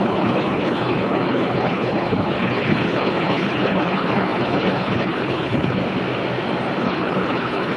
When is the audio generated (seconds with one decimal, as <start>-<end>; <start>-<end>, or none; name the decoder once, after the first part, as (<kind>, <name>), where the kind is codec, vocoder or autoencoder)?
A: 0.0-5.8 (codec, HILCodec); 6.8-7.8